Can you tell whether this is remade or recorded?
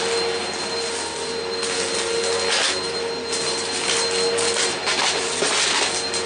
recorded